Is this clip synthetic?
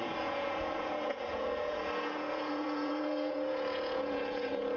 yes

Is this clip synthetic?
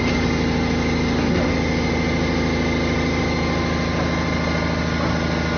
no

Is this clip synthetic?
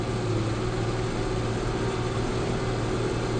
no